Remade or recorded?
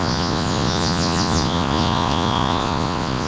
remade